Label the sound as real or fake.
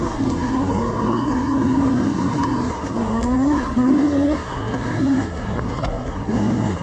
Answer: fake